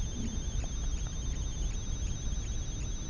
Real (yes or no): yes